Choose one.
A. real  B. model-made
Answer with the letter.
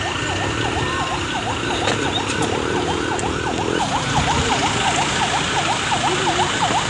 A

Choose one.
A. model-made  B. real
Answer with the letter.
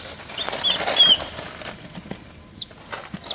B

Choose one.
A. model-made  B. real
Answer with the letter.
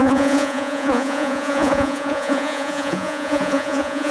A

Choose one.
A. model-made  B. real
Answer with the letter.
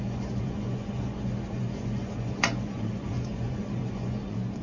A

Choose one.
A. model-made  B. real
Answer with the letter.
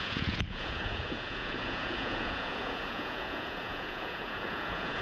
A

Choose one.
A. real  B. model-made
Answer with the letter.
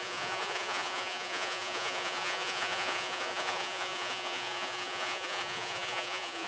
B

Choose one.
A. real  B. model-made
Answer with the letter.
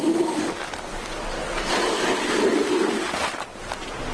A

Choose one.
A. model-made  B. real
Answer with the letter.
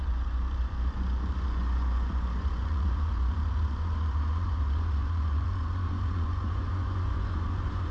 A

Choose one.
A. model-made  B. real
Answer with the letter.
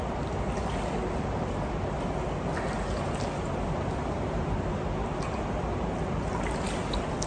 B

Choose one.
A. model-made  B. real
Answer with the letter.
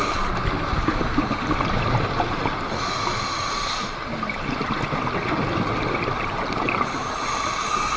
B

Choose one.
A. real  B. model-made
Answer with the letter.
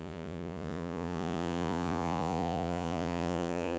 B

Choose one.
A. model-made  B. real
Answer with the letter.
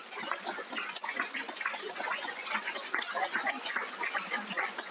A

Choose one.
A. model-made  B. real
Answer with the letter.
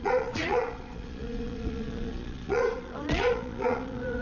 A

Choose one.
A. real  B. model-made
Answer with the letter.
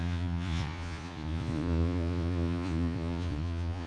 B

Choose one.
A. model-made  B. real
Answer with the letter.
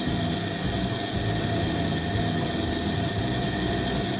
B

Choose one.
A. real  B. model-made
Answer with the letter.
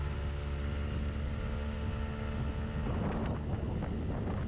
A